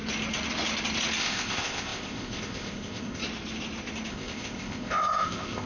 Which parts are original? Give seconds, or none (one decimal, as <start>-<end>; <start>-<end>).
0.0-1.2; 3.2-4.1